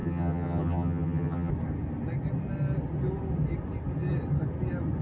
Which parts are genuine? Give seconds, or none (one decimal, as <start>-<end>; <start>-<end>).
1.5-5.0